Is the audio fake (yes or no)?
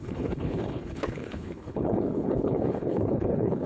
yes